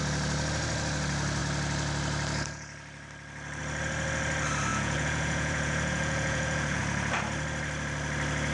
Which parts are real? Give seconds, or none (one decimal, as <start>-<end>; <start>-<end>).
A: 0.0-4.7; 6.8-8.5